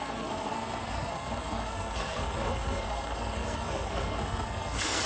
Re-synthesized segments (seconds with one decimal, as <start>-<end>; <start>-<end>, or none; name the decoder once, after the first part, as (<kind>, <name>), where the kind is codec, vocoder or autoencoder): 0.0-5.1 (codec, SNAC)

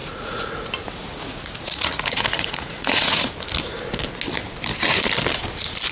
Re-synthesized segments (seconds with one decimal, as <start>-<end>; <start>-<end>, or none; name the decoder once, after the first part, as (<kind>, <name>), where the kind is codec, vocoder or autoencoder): 0.0-0.6 (vocoder, Vocos); 1.0-3.3